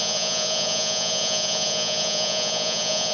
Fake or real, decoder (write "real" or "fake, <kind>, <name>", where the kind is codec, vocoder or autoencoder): fake, vocoder, Vocos